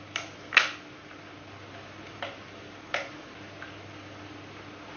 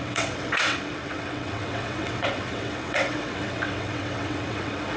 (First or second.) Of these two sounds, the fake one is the second